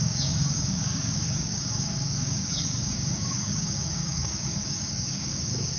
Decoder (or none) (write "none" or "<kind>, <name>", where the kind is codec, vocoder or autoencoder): codec, DAC